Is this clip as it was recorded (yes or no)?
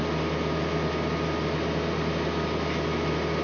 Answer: yes